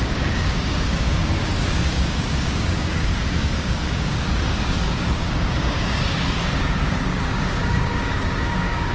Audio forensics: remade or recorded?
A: remade